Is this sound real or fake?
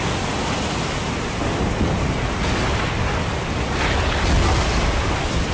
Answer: real